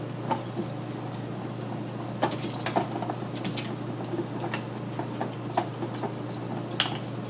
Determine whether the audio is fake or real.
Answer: real